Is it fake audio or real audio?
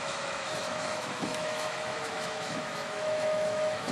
fake